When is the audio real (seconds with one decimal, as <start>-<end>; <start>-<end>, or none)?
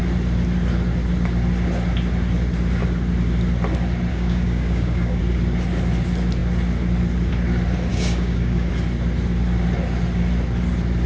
0.0-4.1; 5.2-7.9; 8.7-11.1